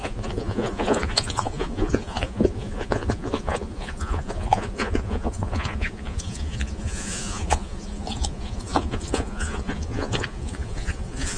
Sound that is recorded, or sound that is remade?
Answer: remade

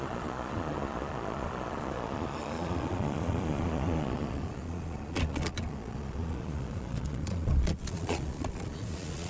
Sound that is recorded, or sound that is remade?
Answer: remade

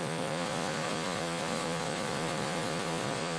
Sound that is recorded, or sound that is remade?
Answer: remade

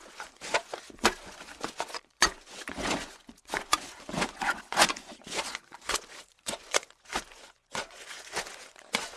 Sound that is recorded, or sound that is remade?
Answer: remade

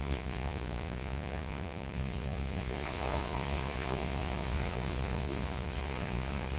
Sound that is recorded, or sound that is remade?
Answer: remade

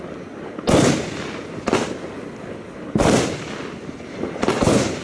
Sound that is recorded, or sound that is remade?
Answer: recorded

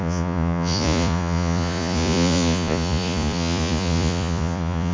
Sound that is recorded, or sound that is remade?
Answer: remade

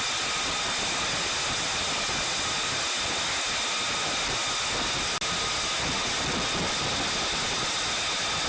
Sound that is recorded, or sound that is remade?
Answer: recorded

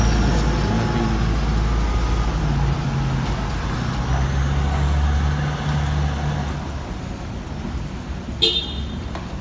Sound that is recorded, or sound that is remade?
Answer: recorded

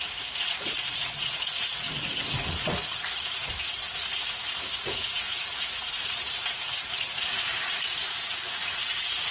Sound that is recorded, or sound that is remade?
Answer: remade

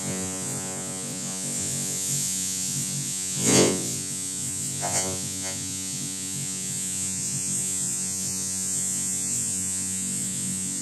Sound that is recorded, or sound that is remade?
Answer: remade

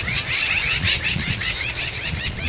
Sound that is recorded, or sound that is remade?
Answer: remade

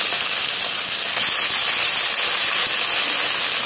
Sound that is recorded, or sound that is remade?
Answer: recorded